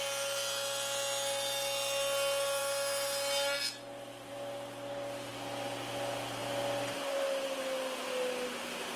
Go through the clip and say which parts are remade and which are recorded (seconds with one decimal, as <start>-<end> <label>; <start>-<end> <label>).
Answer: 0.0-9.0 recorded